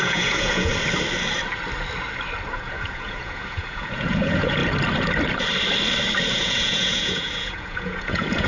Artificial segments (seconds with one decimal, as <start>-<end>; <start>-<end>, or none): 0.0-0.7; 2.5-4.6; 6.3-8.5